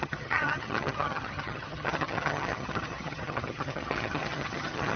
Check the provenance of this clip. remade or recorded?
remade